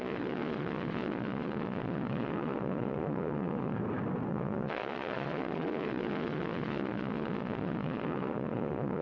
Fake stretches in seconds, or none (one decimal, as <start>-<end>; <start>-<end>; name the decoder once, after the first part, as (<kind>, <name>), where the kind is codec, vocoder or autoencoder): 0.0-3.8 (vocoder, Vocos); 4.3-9.0